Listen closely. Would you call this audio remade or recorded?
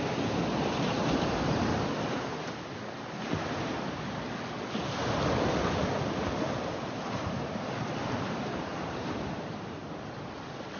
recorded